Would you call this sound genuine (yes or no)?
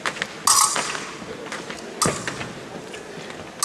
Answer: yes